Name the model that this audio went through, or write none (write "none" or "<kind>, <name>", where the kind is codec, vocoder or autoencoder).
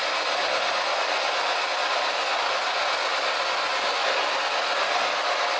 none